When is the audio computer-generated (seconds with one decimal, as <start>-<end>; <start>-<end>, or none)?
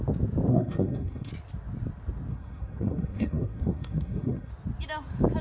0.5-1.3; 2.3-4.5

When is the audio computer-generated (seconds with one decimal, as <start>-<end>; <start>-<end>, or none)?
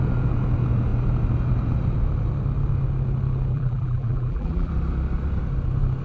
3.5-4.7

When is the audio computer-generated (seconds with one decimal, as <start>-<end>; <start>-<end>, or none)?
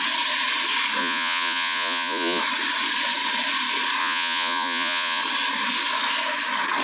1.0-2.4; 4.0-5.2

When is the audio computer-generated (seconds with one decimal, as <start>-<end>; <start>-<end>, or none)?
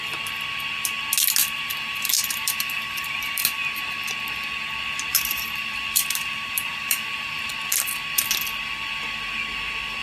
1.4-3.4; 5.1-7.5